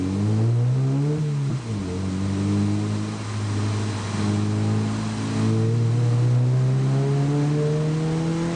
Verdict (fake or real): real